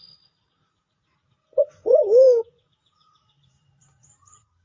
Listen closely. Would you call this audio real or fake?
fake